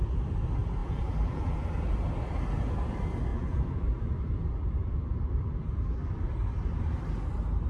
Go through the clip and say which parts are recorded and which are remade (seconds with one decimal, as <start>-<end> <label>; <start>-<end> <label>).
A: 0.0-0.8 recorded; 0.8-1.6 remade; 1.6-3.3 recorded; 3.3-4.1 remade; 4.1-4.8 recorded; 4.8-6.1 remade; 6.1-7.7 recorded